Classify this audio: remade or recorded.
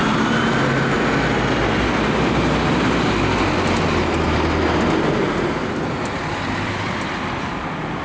recorded